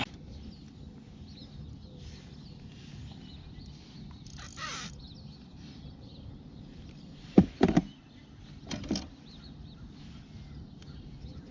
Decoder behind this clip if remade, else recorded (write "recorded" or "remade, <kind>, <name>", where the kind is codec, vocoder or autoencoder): recorded